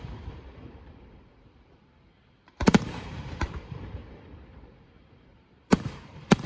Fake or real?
fake